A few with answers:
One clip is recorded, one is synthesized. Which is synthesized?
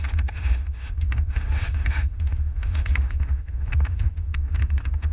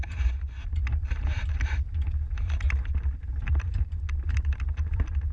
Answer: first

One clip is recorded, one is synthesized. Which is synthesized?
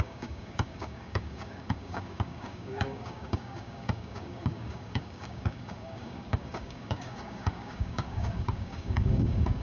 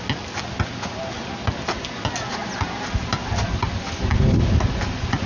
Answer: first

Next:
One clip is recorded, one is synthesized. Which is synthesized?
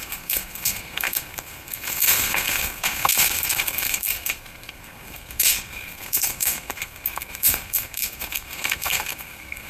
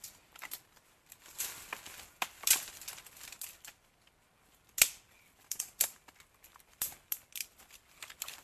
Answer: first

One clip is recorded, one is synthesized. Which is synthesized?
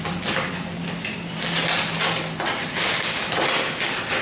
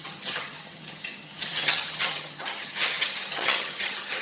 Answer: second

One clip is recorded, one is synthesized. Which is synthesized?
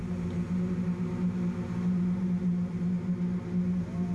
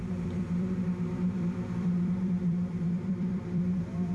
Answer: second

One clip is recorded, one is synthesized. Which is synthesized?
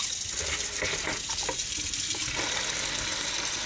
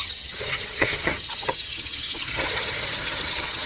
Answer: second